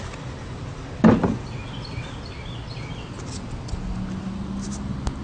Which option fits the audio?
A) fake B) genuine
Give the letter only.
B